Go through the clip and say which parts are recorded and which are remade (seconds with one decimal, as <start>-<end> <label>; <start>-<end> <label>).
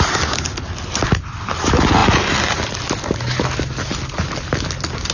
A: 0.0-5.1 recorded